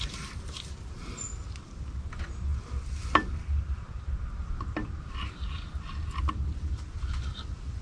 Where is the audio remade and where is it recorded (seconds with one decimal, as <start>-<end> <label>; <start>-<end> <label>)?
0.0-7.8 recorded